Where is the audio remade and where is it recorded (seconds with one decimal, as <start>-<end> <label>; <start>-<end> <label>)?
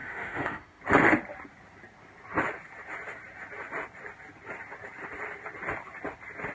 0.0-0.8 remade; 0.8-6.5 recorded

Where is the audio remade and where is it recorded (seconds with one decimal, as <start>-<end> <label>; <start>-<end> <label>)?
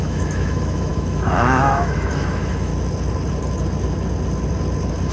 0.0-2.7 remade; 2.7-5.1 recorded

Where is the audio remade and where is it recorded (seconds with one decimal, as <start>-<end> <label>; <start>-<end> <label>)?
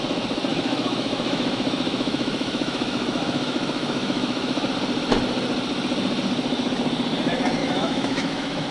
0.0-0.5 recorded; 0.5-4.7 remade; 4.7-7.6 recorded; 7.6-8.7 remade